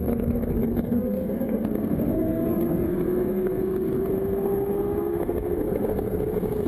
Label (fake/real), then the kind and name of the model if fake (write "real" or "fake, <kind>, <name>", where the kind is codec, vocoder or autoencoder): fake, codec, SNAC